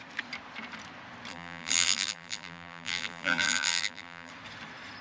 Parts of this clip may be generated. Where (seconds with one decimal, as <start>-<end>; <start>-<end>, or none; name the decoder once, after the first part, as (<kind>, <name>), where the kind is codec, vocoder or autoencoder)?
1.3-4.3 (vocoder, BigVGAN v2)